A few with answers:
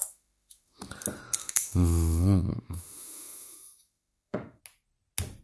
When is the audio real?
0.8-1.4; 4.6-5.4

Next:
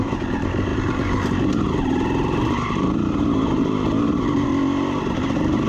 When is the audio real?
4.5-5.1

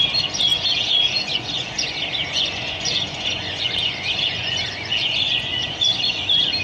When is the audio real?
none

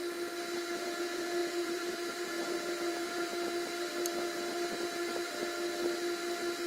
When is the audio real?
0.0-0.8; 3.3-6.7

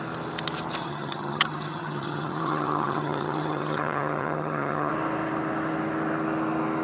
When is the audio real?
0.0-0.8; 4.9-6.8